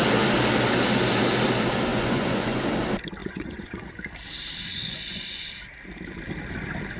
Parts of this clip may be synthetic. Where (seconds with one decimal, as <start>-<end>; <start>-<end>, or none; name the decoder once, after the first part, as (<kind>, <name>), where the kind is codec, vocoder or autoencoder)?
1.9-2.6 (vocoder, Vocos); 3.2-3.9; 4.7-5.5